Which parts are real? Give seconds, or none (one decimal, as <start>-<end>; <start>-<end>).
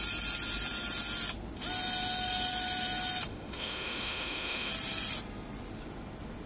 0.0-3.3; 4.7-6.5